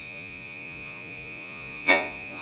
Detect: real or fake fake